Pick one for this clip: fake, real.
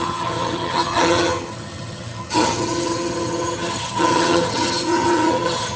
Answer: fake